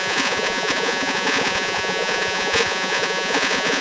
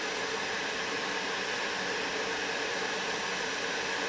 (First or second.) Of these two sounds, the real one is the second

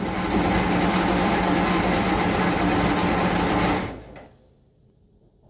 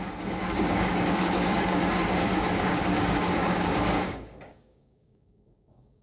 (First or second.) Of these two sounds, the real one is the first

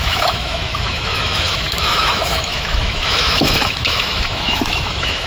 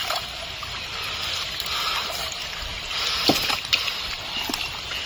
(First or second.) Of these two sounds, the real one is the second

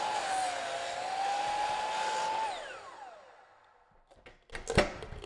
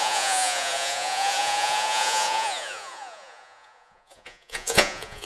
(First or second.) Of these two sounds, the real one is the first